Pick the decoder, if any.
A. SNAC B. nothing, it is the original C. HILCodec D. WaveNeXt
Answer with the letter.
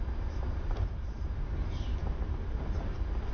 B